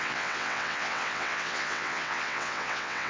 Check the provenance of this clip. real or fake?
fake